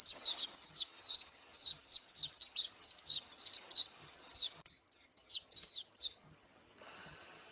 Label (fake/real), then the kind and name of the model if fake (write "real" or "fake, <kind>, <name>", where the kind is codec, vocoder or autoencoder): fake, vocoder, HiFi-GAN